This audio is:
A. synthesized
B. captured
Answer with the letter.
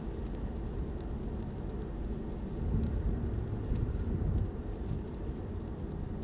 B